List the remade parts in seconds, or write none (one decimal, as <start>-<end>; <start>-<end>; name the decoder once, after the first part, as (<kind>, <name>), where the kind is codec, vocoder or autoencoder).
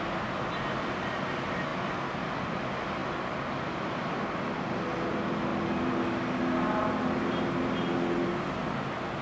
none